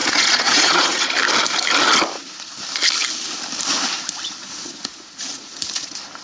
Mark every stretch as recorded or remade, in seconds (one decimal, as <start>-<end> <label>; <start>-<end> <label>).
0.0-1.1 remade; 1.1-4.4 recorded; 4.4-5.6 remade; 5.6-6.2 recorded